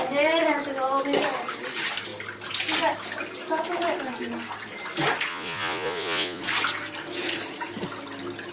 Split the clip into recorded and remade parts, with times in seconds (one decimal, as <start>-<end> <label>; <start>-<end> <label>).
0.0-5.3 recorded; 5.3-6.4 remade; 6.4-8.5 recorded